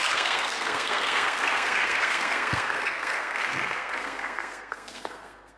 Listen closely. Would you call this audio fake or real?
fake